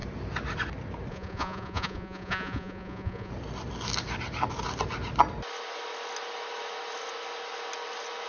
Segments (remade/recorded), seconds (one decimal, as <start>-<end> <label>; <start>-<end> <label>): 0.0-1.1 recorded; 1.1-3.3 remade; 3.3-8.3 recorded